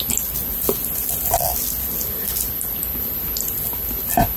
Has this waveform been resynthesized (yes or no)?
no